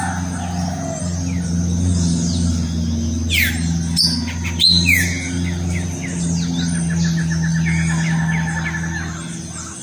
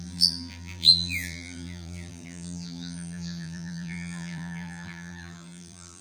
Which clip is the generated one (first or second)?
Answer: second